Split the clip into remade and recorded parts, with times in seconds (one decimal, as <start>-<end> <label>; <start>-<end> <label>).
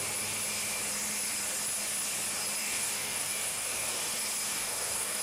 0.0-2.6 recorded; 2.6-4.0 remade; 4.0-4.5 recorded; 4.5-5.2 remade